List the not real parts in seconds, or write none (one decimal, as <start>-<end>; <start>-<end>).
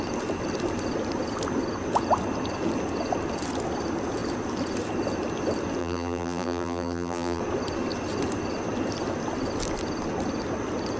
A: 5.8-7.4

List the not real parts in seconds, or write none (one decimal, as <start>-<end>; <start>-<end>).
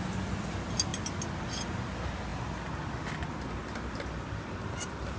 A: none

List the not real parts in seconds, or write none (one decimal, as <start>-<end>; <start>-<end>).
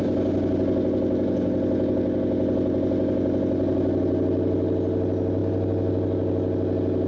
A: none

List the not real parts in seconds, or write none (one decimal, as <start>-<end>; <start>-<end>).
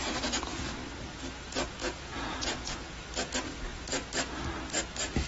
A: 1.8-2.9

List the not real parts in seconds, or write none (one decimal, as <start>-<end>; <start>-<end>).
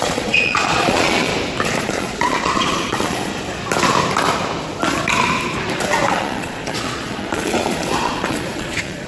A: 0.0-1.3; 1.8-3.3; 6.1-9.1